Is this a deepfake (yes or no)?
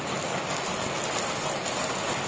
no